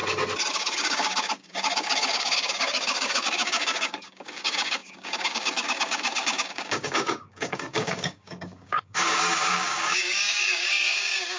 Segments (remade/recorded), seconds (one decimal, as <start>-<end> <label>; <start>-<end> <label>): 0.0-0.5 recorded; 0.5-11.4 remade